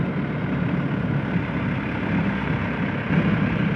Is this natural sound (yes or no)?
yes